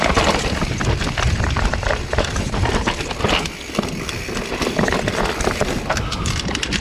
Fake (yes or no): no